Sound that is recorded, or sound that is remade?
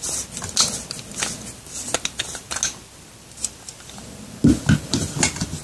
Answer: recorded